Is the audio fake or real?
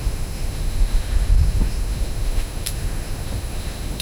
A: fake